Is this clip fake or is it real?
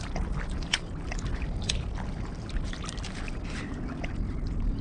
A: real